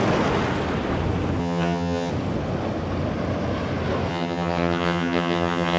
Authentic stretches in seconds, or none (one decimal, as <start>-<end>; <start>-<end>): 0.0-1.4; 2.1-4.1